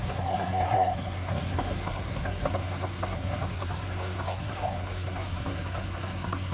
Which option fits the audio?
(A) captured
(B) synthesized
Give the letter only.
B